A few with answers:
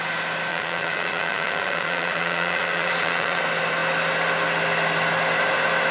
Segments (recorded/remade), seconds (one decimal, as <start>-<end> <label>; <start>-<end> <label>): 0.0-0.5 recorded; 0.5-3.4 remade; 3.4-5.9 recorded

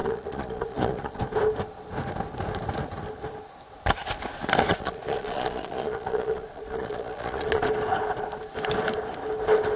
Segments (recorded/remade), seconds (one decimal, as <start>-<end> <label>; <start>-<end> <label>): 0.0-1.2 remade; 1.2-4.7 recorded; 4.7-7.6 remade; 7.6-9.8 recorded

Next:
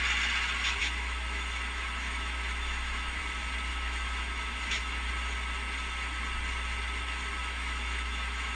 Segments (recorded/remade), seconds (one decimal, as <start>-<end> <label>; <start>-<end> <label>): 0.0-0.8 recorded; 0.8-3.2 remade; 3.2-3.7 recorded; 3.7-5.1 remade; 5.1-7.4 recorded; 7.4-8.5 remade